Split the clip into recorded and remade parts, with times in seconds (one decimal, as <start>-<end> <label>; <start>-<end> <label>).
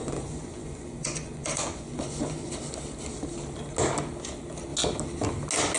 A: 0.0-2.5 remade; 2.5-5.8 recorded